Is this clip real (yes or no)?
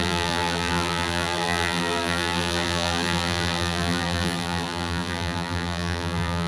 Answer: no